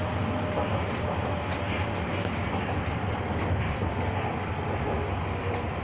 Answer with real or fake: real